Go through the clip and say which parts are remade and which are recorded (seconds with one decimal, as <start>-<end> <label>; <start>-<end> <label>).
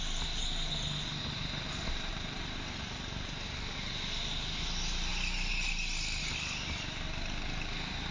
0.0-2.1 recorded; 2.1-4.0 remade; 4.0-8.1 recorded